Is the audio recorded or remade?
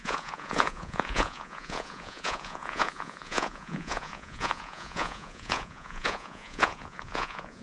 remade